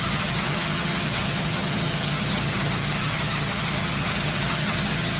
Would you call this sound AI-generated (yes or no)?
yes